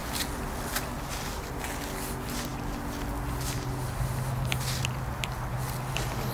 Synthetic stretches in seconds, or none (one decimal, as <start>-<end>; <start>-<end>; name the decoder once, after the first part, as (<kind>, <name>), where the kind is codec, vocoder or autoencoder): none